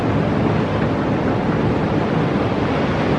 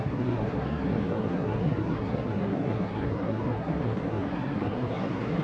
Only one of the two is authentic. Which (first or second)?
first